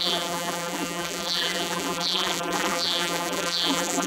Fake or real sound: fake